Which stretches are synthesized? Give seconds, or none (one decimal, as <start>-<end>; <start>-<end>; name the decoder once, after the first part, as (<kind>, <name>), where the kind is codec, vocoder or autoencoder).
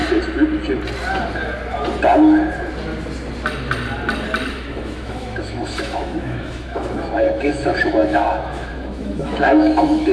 4.5-10.1 (autoencoder, DAC-VAE)